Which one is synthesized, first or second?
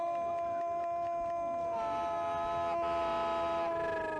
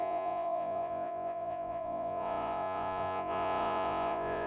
second